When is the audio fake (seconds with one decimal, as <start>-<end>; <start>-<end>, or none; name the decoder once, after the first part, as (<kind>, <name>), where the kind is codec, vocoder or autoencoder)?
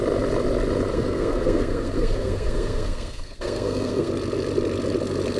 0.9-4.1 (codec, SNAC)